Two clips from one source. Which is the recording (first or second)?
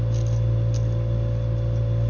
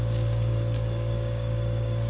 first